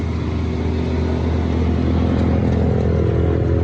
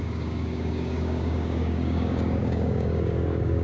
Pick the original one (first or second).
first